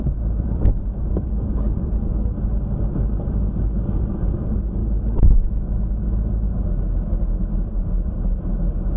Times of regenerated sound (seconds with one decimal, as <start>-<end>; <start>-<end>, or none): 0.0-2.1; 4.0-4.8; 7.5-9.0